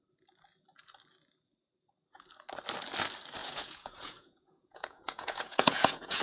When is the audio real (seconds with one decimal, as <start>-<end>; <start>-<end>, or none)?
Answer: 0.0-3.4